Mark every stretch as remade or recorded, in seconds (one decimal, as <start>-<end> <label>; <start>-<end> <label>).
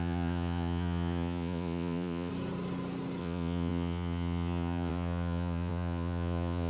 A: 0.0-2.3 remade; 2.3-3.2 recorded; 3.2-6.7 remade